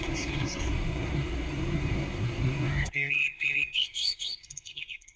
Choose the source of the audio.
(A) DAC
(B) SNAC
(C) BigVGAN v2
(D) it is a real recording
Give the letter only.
B